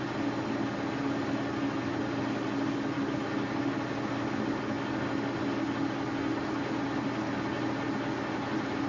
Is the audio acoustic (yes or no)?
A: yes